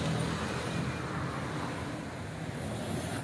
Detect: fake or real real